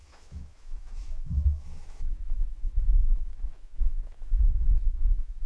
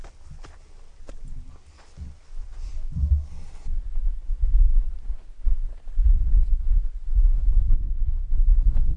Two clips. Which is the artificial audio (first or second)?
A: first